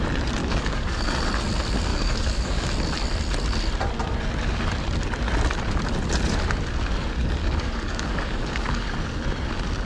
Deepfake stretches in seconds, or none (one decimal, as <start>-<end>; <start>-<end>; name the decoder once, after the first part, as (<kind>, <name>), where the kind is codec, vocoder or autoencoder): 0.4-1.0 (codec, DAC); 1.9-2.7; 7.4-8.9